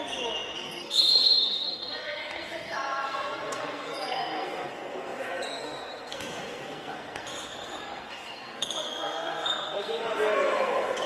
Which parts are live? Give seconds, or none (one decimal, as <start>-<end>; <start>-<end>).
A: none